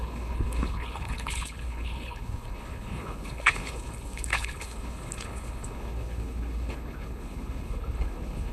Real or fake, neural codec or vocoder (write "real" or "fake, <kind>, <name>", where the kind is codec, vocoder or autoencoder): fake, codec, HILCodec